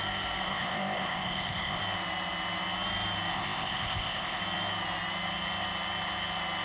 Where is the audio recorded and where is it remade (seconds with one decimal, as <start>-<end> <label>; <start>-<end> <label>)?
0.0-0.5 recorded; 0.5-1.8 remade; 1.8-3.3 recorded; 3.3-4.4 remade; 4.4-6.6 recorded